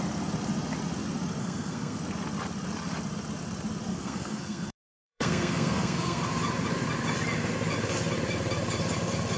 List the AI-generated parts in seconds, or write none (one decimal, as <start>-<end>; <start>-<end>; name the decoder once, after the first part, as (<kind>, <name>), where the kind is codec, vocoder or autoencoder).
1.4-2.0 (codec, SNAC); 3.9-6.2